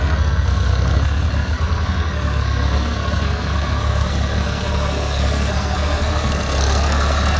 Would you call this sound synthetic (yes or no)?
yes